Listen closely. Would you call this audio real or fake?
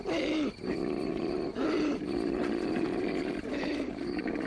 real